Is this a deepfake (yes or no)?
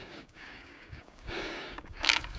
yes